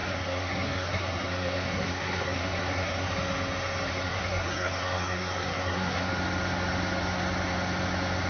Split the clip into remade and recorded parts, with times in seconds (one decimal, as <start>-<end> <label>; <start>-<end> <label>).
0.0-3.1 remade; 3.1-3.9 recorded; 3.9-6.1 remade; 6.1-8.3 recorded